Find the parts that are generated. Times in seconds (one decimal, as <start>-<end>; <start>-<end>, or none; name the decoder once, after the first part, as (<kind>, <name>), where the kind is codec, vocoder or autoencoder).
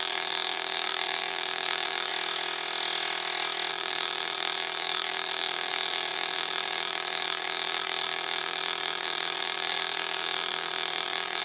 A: 0.0-2.1 (vocoder, BigVGAN v2); 3.7-11.4